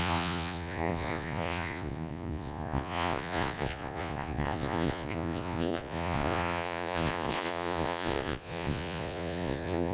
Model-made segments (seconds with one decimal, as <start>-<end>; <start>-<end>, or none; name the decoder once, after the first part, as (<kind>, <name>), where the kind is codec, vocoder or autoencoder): 0.0-9.9 (vocoder, Vocos)